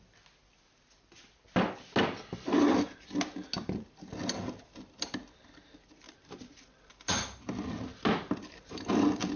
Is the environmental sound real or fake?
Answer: real